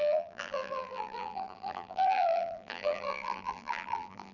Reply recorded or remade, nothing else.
remade